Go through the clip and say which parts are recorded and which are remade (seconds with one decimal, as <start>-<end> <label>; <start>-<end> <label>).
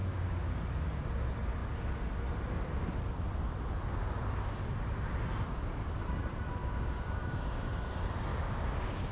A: 0.0-0.6 remade; 0.6-6.6 recorded; 6.6-7.9 remade; 7.9-8.3 recorded; 8.3-9.1 remade